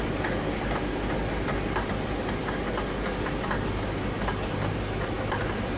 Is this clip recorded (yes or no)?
yes